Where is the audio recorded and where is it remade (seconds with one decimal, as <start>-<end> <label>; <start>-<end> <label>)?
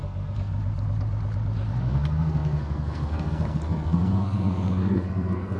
0.0-0.5 remade; 0.5-1.8 recorded; 1.8-5.6 remade